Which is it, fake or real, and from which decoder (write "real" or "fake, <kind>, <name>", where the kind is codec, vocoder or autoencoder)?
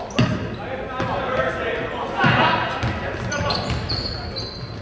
real